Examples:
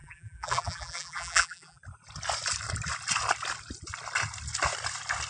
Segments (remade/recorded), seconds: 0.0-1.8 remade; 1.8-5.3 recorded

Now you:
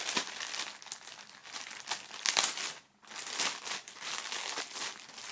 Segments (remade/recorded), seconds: 0.0-5.3 recorded

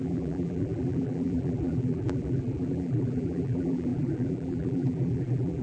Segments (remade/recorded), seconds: 0.0-5.6 remade

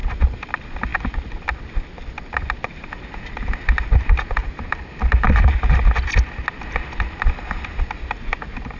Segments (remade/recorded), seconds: 0.0-0.5 remade; 0.5-4.4 recorded; 4.4-5.5 remade; 5.5-8.8 recorded

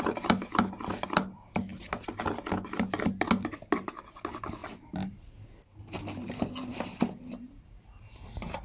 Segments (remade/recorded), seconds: 0.0-6.7 recorded; 6.7-8.6 remade

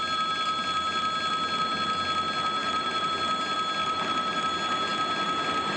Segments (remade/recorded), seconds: 0.0-2.6 recorded; 2.6-3.1 remade; 3.1-3.8 recorded; 3.8-4.5 remade; 4.5-5.8 recorded